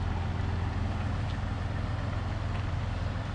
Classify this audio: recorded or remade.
recorded